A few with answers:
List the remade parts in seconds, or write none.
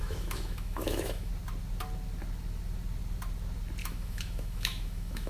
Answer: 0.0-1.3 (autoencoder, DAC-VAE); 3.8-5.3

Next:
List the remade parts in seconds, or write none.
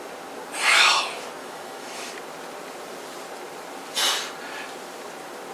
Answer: 1.4-2.1 (autoencoder, DAC-VAE)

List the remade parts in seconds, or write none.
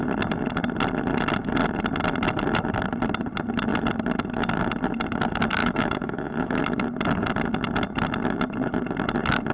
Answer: 5.6-6.6 (autoencoder, DAC-VAE)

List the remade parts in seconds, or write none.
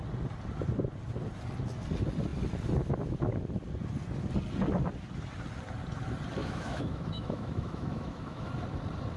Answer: 6.4-8.5 (autoencoder, DAC-VAE)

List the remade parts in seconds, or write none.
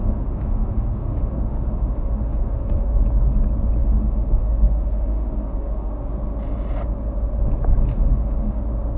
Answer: 0.0-3.0 (autoencoder, DAC-VAE); 3.8-5.9; 7.9-8.6